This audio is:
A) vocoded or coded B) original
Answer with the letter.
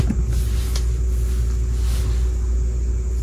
B